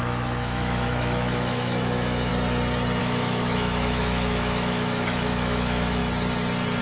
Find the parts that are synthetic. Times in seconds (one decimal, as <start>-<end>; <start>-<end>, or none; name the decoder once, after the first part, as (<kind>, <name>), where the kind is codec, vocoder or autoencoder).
0.0-2.3 (autoencoder, DAC-VAE); 3.0-6.0